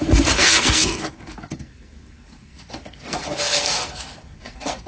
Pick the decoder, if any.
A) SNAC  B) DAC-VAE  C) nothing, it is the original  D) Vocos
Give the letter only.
A